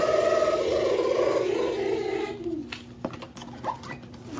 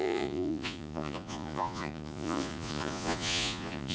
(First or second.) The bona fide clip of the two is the first